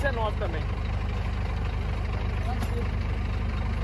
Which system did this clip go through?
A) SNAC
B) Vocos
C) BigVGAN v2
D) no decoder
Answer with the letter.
D